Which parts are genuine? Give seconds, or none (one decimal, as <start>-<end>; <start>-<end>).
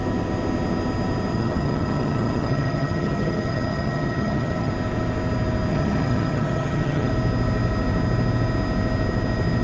0.0-1.3; 4.7-5.7; 7.1-9.6